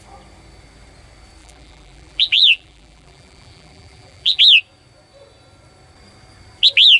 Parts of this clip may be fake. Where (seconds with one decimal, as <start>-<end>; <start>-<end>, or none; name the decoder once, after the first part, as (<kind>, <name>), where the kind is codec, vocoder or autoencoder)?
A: 1.4-4.4 (vocoder, BigVGAN v2)